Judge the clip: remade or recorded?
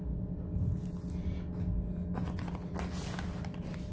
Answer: recorded